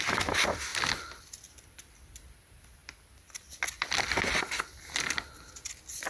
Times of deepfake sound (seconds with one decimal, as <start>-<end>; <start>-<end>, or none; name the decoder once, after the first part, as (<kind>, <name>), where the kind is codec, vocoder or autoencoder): none